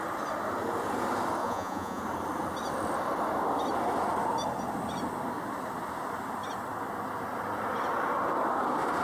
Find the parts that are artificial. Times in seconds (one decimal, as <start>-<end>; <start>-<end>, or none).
1.4-2.0